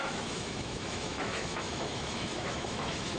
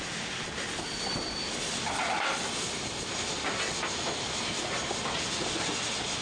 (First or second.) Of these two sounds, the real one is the second